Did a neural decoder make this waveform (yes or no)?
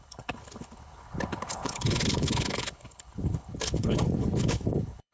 yes